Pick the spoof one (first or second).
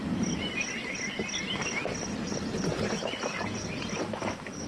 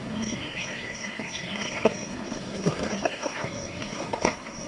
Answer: second